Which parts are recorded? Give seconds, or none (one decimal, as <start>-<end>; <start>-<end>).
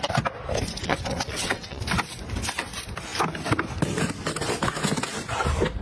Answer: 0.0-0.8; 1.8-5.8